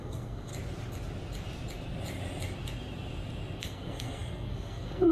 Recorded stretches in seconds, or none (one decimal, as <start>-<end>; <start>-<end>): 0.5-3.6